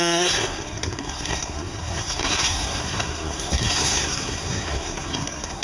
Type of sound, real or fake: fake